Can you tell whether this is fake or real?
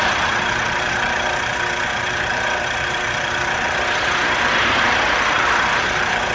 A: fake